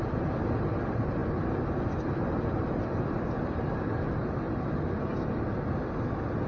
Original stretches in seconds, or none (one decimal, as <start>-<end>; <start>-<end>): 0.0-6.5